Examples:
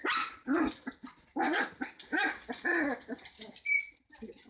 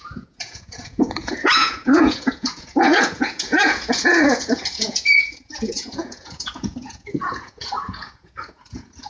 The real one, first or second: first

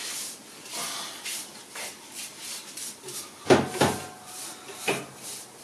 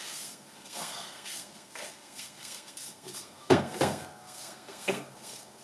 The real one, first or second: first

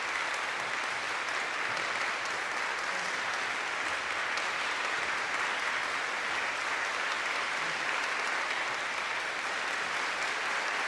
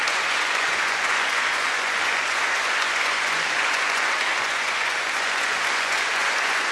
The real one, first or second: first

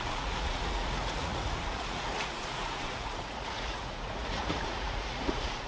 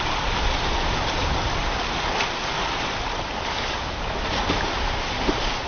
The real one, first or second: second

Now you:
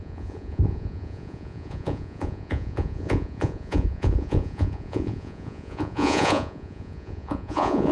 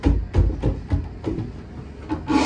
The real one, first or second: second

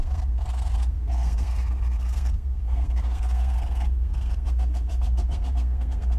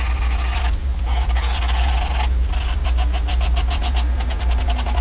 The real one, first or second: second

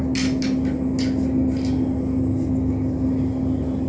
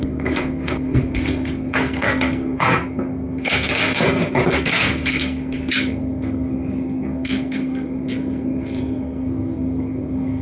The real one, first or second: first